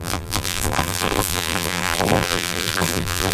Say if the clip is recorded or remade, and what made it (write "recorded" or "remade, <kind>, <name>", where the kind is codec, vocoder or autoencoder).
remade, vocoder, BigVGAN v2